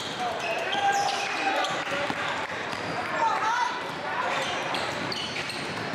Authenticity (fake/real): fake